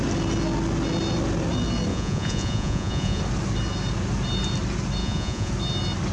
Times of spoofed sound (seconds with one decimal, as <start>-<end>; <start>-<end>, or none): 1.9-3.2; 5.0-5.5